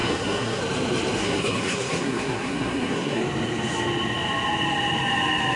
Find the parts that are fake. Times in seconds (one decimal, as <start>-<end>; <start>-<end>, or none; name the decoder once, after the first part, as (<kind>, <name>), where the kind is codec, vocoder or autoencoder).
0.0-0.6 (codec, SNAC); 1.2-3.2